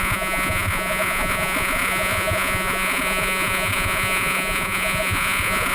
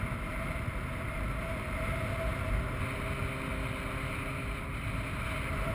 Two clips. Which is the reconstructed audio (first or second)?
first